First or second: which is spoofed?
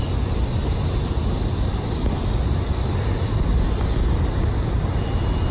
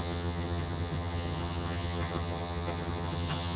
second